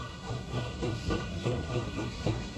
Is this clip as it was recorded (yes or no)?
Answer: no